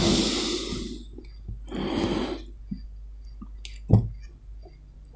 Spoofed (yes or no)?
no